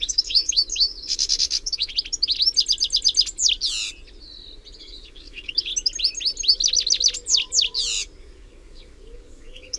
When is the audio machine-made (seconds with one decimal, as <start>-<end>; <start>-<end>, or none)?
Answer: 0.0-1.9; 4.8-5.7; 8.2-9.8